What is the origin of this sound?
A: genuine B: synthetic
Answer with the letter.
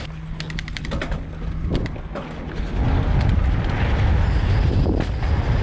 A